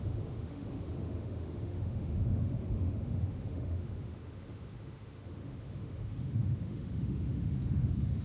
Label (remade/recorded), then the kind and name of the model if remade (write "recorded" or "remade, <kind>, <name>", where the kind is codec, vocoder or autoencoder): remade, autoencoder, DAC-VAE